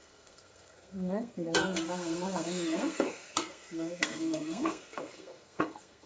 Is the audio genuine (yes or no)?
no